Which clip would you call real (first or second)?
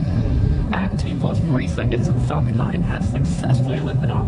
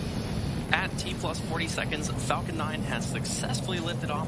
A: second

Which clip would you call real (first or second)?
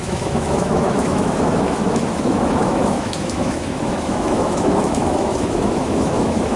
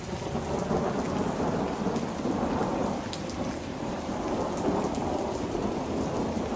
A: second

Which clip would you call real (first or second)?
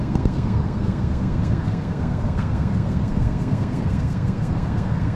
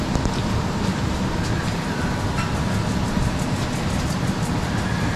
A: second